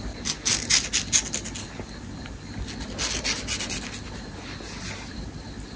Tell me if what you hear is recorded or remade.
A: recorded